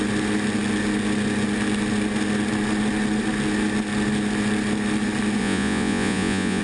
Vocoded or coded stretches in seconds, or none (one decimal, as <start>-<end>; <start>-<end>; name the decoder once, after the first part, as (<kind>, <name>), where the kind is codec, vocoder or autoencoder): 5.4-6.6 (vocoder, Vocos)